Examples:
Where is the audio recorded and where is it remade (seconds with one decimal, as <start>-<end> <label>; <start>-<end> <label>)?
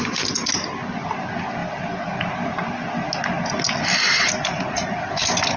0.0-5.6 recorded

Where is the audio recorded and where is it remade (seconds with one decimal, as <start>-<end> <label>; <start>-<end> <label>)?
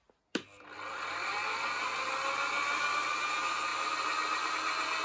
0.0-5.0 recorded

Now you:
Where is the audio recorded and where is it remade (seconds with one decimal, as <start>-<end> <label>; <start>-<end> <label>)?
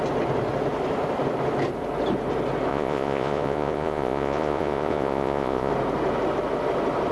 0.0-2.7 recorded; 2.7-5.7 remade; 5.7-7.1 recorded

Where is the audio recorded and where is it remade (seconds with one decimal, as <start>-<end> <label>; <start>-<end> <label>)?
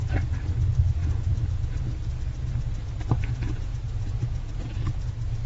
0.0-1.0 recorded; 1.0-2.2 remade; 2.2-3.0 recorded; 3.0-4.8 remade; 4.8-5.5 recorded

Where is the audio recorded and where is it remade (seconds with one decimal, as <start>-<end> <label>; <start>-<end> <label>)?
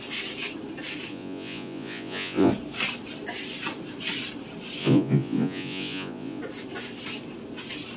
0.0-1.1 recorded; 1.1-2.5 remade; 2.5-4.8 recorded; 4.8-6.4 remade; 6.4-8.0 recorded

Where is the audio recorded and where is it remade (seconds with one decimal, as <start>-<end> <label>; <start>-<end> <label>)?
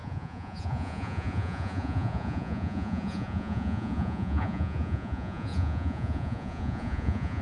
0.0-7.4 remade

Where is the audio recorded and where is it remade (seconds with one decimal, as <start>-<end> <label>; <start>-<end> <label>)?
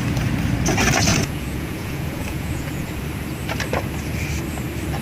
0.0-1.1 recorded; 1.1-3.0 remade; 3.0-5.0 recorded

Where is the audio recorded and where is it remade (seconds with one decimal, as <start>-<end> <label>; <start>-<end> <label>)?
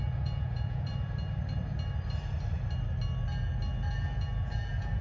0.0-0.9 remade; 0.9-3.9 recorded; 3.9-5.0 remade